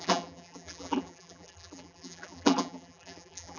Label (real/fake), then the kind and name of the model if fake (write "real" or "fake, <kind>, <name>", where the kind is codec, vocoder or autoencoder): fake, vocoder, BigVGAN v2